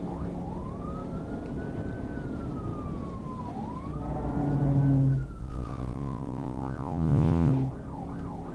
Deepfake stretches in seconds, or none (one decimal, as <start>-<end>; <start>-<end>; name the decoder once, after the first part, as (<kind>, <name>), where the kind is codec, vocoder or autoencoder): 5.4-7.5 (vocoder, Vocos)